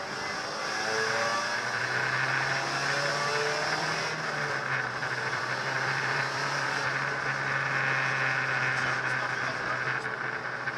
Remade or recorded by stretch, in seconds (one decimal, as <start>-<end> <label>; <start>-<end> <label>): 0.0-3.1 recorded; 3.1-4.6 remade; 4.6-5.0 recorded; 5.0-7.1 remade; 7.1-10.8 recorded